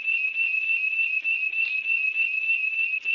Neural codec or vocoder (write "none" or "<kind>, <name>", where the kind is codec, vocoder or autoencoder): vocoder, BigVGAN v2